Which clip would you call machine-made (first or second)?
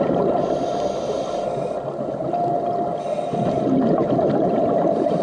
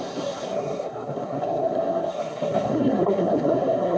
second